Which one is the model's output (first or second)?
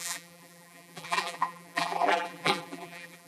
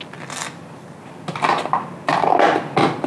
first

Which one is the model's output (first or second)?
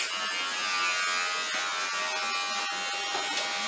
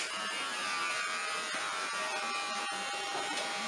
second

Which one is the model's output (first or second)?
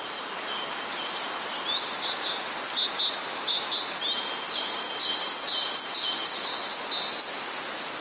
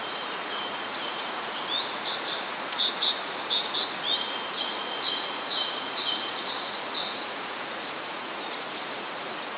second